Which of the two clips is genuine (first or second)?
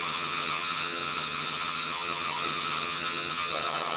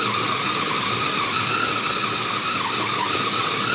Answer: second